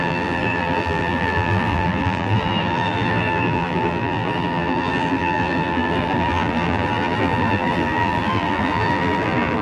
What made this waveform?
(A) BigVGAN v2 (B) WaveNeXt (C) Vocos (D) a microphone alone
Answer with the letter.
A